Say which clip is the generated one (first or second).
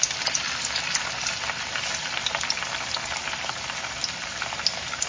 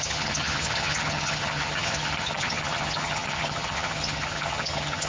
second